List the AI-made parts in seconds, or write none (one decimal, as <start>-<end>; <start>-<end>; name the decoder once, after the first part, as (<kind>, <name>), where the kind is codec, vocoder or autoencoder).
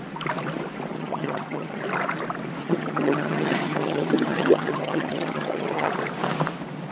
0.9-1.8 (vocoder, HiFi-GAN); 2.6-5.9